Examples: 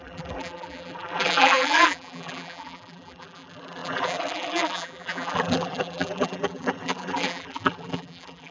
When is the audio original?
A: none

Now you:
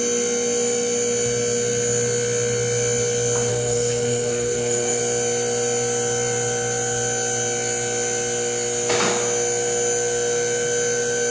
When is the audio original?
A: 0.0-3.5; 5.0-11.3

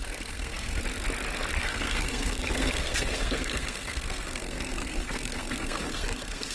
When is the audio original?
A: 0.8-1.6

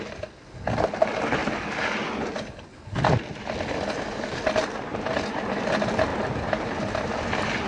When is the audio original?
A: 0.0-4.9; 5.6-6.1; 6.7-7.7